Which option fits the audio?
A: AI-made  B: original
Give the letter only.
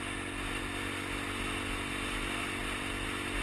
B